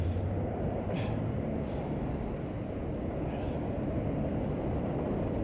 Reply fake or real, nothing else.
fake